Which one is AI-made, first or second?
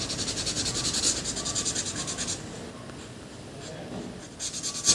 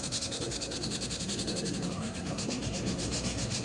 second